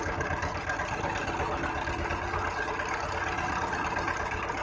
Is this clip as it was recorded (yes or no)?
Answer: yes